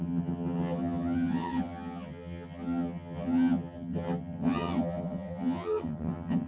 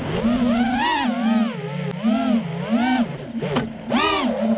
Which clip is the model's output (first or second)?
first